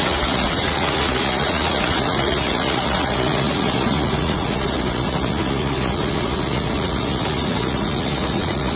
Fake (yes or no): yes